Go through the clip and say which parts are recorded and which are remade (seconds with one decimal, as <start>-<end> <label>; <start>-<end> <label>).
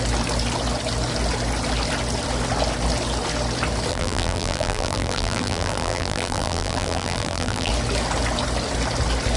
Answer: 0.0-3.9 recorded; 3.9-7.7 remade; 7.7-9.4 recorded